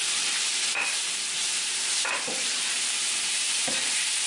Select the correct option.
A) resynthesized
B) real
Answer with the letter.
A